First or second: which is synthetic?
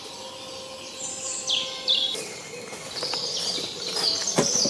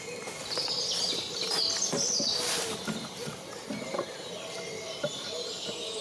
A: first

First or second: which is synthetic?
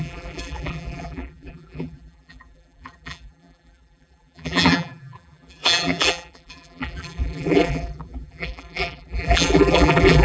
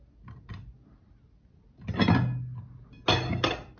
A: first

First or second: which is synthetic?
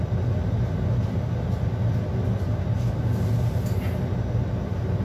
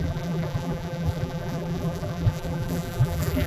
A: second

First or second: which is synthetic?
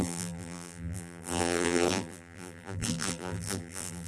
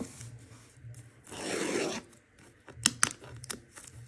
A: first